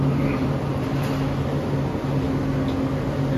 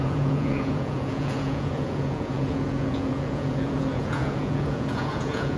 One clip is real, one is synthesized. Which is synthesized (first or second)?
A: second